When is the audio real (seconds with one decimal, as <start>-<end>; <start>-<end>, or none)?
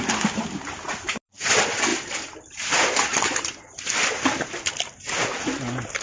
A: 0.0-6.0